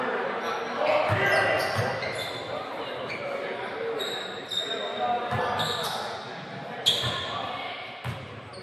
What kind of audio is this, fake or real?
real